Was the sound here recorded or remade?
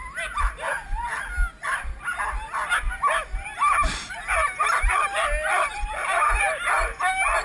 recorded